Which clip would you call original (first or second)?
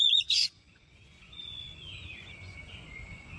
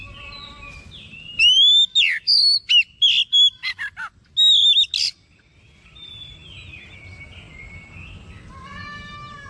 second